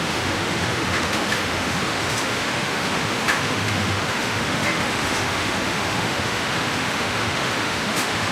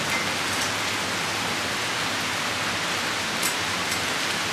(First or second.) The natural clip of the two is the second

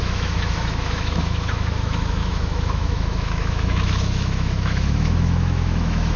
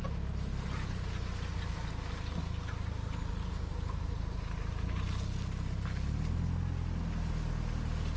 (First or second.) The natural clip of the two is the second